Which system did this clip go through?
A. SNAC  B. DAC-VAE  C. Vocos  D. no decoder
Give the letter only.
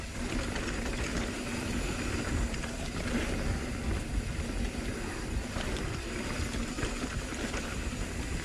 D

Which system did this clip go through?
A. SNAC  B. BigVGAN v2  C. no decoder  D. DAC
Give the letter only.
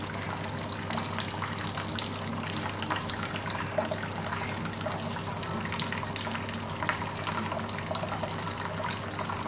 C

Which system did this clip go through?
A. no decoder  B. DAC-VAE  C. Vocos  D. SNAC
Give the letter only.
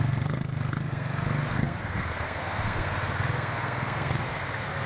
D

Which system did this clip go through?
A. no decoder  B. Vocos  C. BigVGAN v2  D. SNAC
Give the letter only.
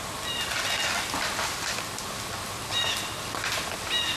A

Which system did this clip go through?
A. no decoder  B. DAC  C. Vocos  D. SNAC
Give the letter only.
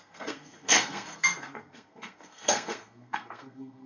D